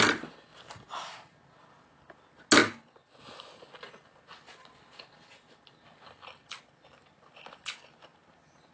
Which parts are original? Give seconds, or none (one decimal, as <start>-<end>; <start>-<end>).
0.0-8.7